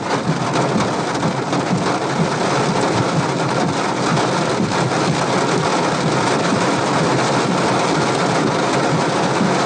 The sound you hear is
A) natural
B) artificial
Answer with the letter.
A